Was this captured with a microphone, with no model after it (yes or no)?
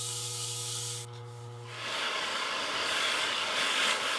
no